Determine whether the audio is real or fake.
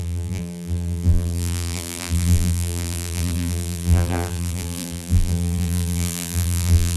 fake